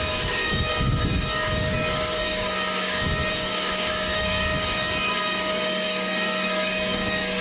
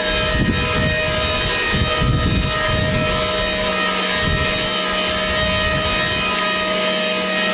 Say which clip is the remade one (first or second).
first